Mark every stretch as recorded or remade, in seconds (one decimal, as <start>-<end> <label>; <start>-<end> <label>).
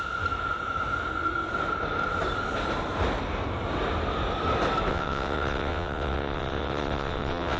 0.0-4.9 recorded; 4.9-7.6 remade